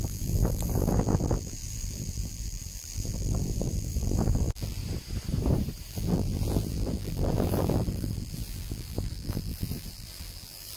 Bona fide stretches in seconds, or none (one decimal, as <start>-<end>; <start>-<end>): 4.8-5.9